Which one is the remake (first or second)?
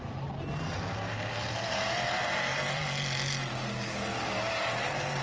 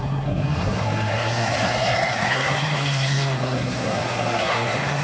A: second